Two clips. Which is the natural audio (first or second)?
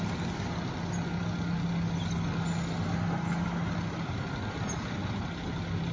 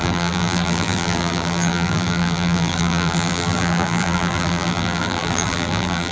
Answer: first